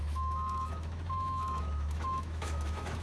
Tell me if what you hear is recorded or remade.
remade